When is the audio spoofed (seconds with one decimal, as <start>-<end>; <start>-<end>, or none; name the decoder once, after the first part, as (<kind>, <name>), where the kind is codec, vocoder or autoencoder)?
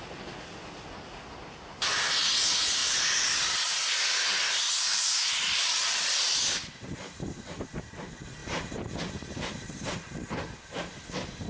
2.8-3.7 (vocoder, BigVGAN v2); 4.9-7.9; 8.4-11.5